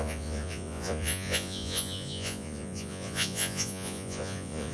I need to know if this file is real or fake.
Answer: fake